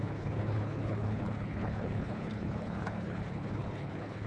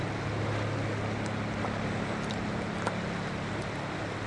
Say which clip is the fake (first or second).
first